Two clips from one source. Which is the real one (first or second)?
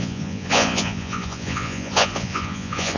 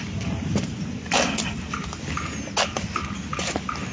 second